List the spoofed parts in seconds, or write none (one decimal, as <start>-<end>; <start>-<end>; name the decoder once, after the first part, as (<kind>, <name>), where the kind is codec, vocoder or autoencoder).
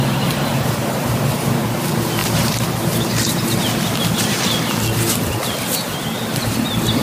0.5-1.2 (vocoder, BigVGAN v2); 2.2-2.8